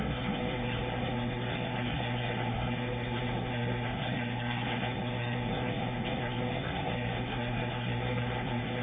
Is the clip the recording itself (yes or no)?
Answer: no